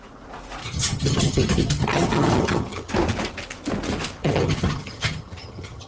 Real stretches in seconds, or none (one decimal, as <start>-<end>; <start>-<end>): 0.0-0.6; 2.9-4.2